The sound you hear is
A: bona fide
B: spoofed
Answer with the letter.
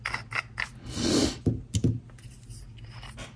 A